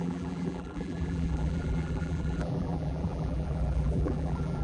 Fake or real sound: fake